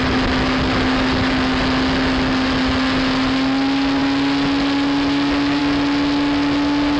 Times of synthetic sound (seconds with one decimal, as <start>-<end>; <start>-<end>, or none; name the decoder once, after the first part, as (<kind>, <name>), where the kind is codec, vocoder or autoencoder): none